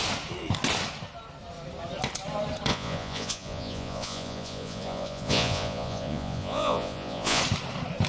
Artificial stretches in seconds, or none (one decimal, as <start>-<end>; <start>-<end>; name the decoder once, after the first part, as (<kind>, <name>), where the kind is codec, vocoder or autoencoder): 2.7-7.4 (vocoder, Vocos)